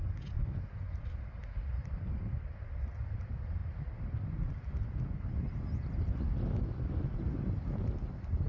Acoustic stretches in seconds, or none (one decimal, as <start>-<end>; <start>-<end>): 0.0-8.5